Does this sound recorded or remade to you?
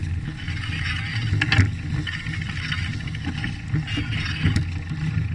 recorded